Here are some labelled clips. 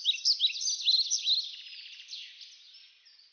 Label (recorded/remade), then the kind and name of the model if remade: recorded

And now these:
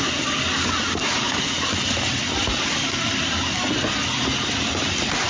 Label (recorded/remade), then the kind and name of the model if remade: recorded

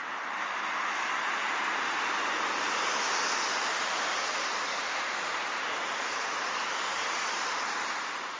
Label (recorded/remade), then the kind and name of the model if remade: remade, vocoder, BigVGAN v2